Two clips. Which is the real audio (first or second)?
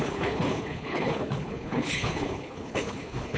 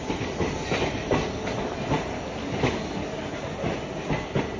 second